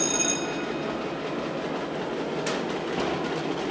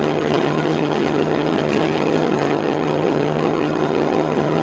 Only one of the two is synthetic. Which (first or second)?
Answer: second